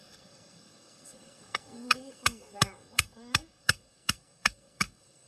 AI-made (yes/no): yes